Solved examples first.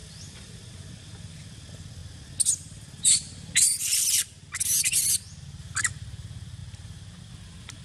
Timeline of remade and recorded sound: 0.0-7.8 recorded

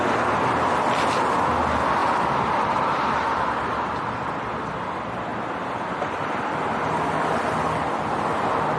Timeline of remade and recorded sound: 0.0-8.8 recorded